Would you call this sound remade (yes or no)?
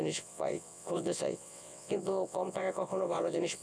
yes